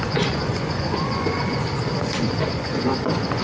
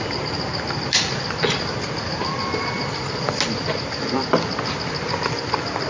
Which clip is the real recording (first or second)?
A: second